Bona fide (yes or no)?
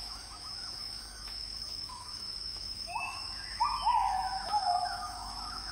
no